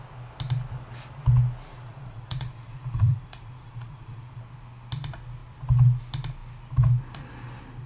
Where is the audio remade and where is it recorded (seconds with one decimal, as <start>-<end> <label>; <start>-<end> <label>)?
0.0-1.7 recorded; 1.7-4.4 remade; 4.4-7.9 recorded